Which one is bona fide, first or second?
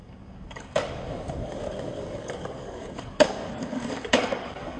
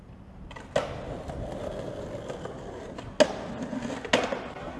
second